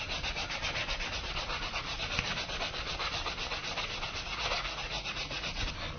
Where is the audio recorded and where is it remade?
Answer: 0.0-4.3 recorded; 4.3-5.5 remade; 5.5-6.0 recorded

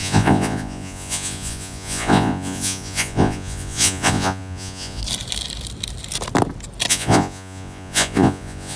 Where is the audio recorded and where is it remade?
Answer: 0.0-5.0 remade; 5.0-6.9 recorded; 6.9-8.8 remade

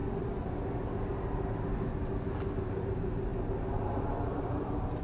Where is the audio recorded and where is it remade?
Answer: 0.0-5.0 recorded